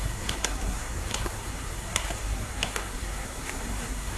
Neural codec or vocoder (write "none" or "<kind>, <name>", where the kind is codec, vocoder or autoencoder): codec, SNAC